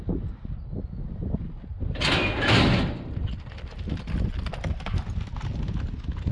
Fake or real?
real